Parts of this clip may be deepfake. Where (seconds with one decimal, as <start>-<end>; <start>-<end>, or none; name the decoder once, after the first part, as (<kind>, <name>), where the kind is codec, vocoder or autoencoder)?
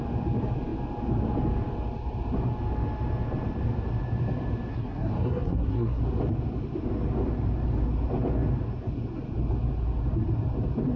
4.7-6.0 (codec, SNAC)